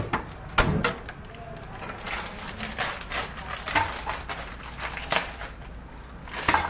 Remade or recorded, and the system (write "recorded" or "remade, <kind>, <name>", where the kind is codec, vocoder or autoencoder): recorded